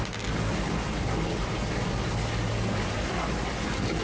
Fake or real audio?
real